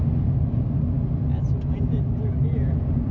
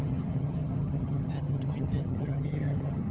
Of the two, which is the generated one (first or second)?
second